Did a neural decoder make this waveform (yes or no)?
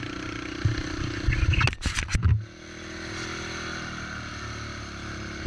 no